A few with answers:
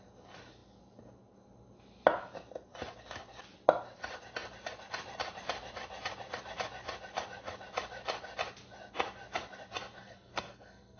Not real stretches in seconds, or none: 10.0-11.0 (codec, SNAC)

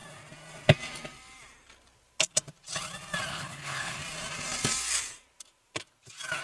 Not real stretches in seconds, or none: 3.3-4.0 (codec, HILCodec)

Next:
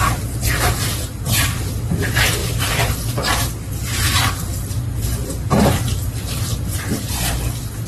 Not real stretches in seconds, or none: none